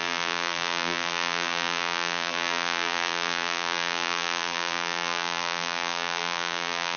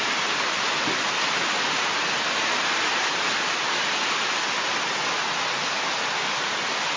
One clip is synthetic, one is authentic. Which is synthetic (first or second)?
first